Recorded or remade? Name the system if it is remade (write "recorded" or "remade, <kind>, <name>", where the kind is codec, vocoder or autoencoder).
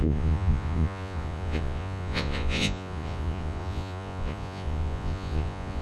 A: remade, vocoder, Vocos